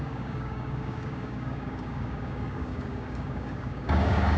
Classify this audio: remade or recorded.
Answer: remade